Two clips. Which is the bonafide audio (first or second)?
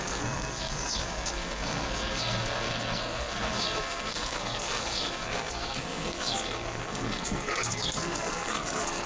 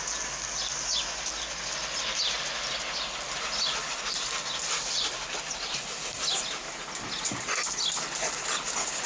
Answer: second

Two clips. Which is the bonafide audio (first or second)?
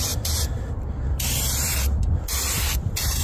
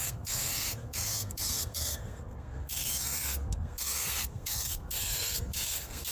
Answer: first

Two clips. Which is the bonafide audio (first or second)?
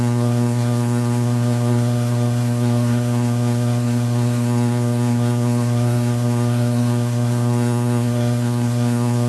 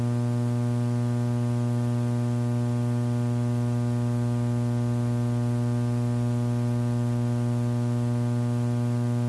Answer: second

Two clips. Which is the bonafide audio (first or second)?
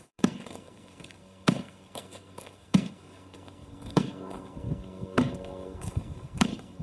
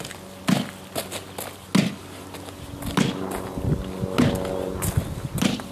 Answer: second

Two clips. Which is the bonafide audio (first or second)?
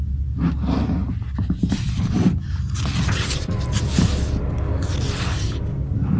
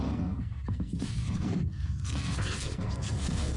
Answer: first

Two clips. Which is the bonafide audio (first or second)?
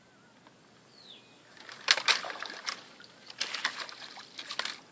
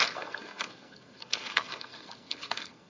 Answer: first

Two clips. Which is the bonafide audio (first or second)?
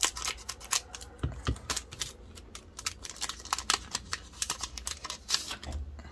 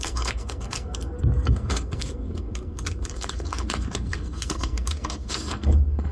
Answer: first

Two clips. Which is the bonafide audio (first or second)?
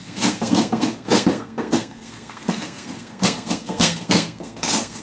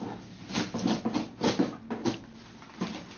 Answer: second